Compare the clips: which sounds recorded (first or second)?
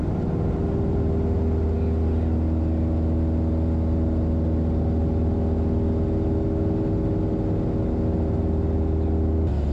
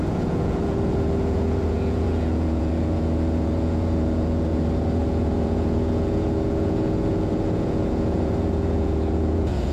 first